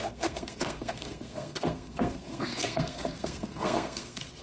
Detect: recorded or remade remade